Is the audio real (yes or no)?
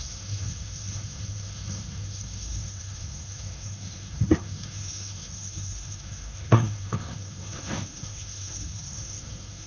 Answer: no